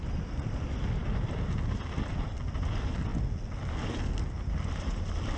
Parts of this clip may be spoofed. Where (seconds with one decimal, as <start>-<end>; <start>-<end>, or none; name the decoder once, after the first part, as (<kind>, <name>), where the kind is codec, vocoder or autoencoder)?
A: none